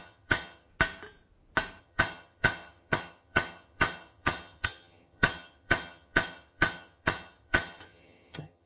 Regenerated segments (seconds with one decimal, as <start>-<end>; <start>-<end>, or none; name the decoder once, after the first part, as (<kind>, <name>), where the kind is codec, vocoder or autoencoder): 0.0-0.7 (vocoder, HiFi-GAN); 1.8-8.7